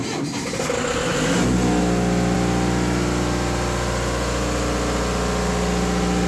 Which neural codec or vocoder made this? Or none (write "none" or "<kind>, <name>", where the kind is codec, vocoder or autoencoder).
none